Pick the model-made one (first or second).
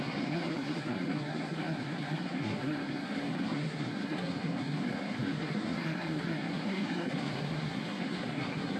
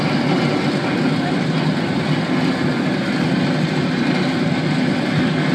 first